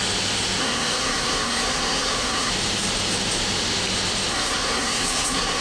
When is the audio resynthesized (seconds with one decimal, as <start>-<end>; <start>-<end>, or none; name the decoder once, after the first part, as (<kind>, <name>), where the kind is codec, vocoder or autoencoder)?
0.6-2.5 (codec, SNAC); 4.3-5.6